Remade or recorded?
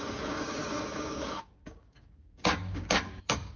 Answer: remade